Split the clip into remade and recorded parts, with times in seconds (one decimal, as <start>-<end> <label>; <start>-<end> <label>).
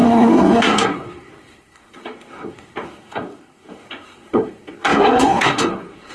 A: 0.0-6.1 remade